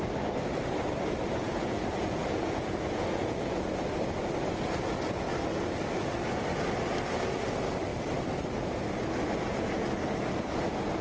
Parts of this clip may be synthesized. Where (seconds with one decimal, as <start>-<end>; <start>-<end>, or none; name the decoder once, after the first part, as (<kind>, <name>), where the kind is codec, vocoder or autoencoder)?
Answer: 1.4-3.7 (vocoder, Vocos)